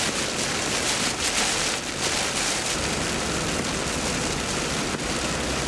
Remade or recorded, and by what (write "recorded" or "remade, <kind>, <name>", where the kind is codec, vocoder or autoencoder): recorded